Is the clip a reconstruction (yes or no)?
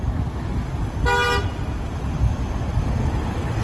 no